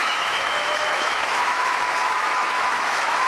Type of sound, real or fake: fake